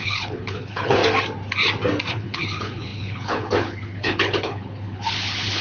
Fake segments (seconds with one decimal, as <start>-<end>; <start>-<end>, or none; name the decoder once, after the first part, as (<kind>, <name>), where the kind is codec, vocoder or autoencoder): 0.0-1.0 (codec, HILCodec); 2.1-5.6